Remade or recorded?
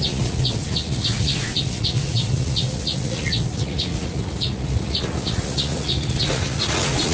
remade